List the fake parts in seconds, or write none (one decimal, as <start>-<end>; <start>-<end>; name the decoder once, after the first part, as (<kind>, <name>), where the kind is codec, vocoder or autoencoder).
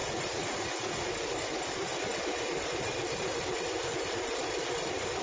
0.0-1.0 (vocoder, Vocos)